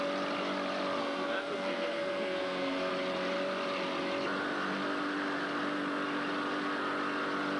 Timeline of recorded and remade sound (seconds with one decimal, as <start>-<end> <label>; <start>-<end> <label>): 0.0-1.0 recorded; 1.0-2.9 remade; 2.9-7.6 recorded